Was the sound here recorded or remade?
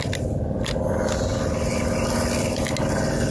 recorded